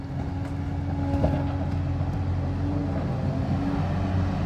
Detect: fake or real real